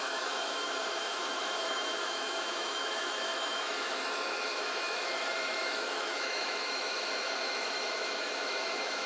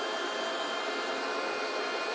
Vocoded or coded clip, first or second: first